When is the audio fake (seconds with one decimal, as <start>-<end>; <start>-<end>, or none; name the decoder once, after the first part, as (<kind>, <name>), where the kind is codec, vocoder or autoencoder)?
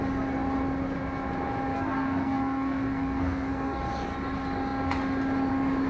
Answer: 1.7-3.8 (codec, SNAC)